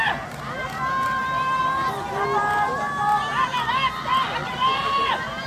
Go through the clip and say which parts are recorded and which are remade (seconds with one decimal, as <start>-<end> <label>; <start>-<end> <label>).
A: 0.0-4.4 recorded; 4.4-5.1 remade; 5.1-5.5 recorded